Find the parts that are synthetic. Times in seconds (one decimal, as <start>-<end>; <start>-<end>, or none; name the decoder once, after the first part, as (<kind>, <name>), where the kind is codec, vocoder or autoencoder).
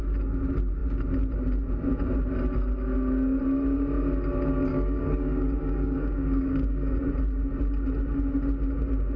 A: 4.7-7.0 (codec, DAC)